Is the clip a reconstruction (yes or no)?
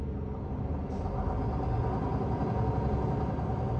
no